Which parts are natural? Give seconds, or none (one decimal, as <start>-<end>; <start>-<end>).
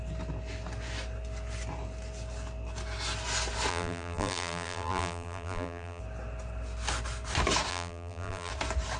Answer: 0.0-3.7; 6.0-7.7; 8.5-9.0